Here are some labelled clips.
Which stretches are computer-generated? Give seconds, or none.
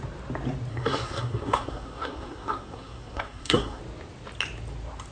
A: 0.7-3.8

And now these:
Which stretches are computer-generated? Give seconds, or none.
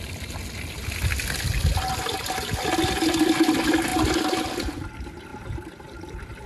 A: none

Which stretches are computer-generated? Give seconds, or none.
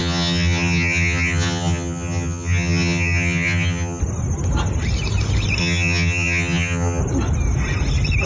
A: 0.0-4.0; 5.6-7.0